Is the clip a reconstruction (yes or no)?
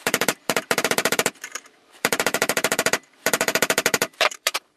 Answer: yes